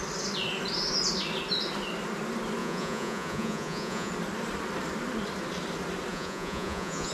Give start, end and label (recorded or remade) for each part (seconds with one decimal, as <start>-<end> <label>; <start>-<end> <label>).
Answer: 0.0-2.6 recorded; 2.6-4.1 remade; 4.1-6.1 recorded; 6.1-7.1 remade